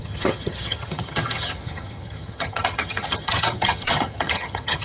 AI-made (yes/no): yes